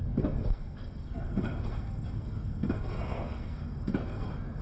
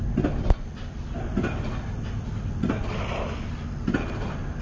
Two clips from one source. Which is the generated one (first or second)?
first